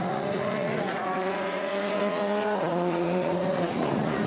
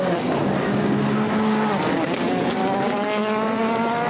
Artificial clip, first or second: first